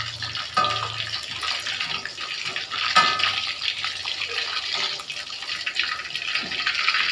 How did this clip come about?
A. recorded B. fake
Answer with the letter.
A